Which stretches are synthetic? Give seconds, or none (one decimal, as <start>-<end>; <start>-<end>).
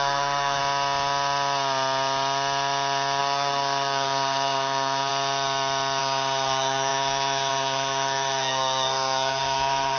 0.0-0.6; 3.2-5.1; 6.0-10.0